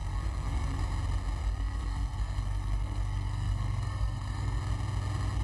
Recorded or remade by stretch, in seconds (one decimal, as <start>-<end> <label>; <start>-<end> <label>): 0.0-0.8 remade; 0.8-1.4 recorded; 1.4-4.6 remade; 4.6-5.4 recorded